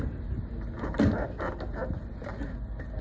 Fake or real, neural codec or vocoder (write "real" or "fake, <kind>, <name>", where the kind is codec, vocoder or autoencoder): real